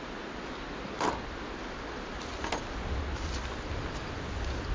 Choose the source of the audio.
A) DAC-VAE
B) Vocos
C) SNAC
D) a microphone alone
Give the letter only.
D